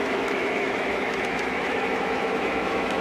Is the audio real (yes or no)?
no